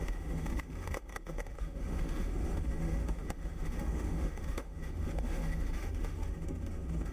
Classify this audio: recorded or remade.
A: remade